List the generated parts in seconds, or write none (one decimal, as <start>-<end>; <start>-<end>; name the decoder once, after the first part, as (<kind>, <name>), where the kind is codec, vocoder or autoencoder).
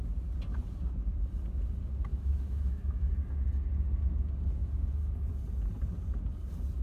2.1-3.1 (autoencoder, DAC-VAE)